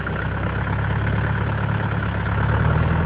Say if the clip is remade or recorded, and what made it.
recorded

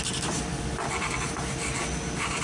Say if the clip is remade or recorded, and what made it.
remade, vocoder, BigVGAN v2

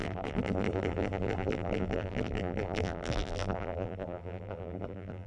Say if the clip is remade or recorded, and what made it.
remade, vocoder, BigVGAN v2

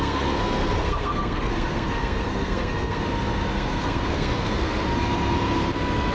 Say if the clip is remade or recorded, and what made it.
remade, codec, SNAC